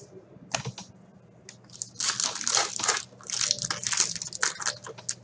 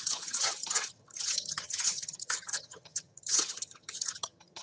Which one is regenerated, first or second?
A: second